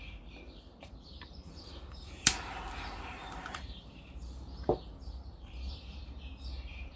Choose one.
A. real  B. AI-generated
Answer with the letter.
B